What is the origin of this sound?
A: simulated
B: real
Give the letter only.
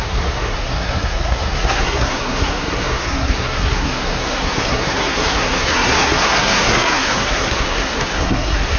A